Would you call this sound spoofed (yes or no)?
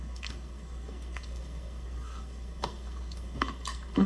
yes